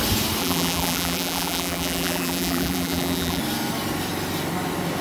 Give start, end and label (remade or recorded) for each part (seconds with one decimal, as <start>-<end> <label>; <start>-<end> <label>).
0.0-0.4 recorded; 0.4-3.4 remade; 3.4-5.0 recorded